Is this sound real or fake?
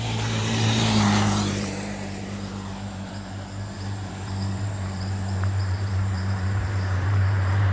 fake